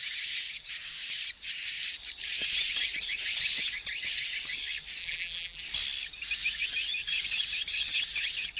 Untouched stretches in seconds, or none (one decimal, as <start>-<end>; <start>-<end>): 0.0-5.0; 5.6-8.6